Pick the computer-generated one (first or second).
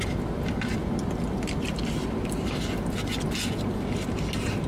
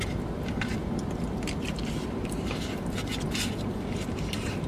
second